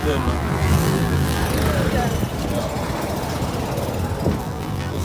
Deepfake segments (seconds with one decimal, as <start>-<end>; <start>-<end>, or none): 0.0-1.4; 4.4-5.0